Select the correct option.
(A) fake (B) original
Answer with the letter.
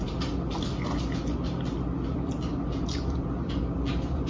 B